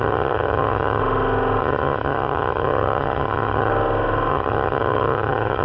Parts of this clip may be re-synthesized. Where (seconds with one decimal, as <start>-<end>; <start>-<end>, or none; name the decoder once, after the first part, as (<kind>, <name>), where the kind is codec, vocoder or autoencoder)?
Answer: 0.0-1.0 (vocoder, HiFi-GAN); 1.6-3.7; 4.3-5.6